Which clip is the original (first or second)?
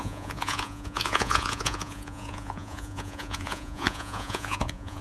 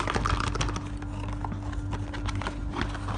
second